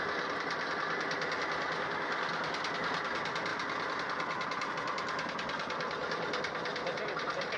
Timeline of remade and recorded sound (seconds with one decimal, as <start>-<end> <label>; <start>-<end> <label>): 0.0-7.6 recorded